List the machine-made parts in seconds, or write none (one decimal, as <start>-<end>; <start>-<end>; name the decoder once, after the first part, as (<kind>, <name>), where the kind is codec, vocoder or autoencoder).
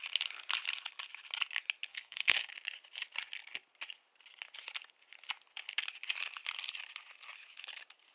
1.9-2.5 (codec, SNAC)